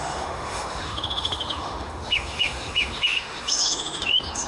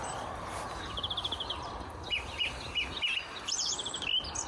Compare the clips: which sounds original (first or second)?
second